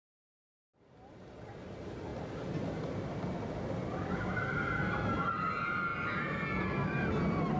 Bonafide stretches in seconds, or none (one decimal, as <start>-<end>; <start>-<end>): 0.0-7.6